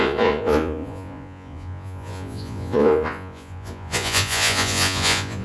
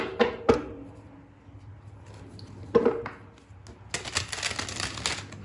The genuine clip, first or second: second